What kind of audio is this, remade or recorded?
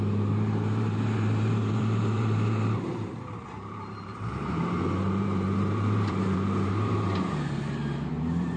remade